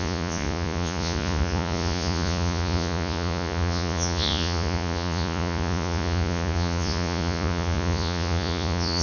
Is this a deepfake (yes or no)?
yes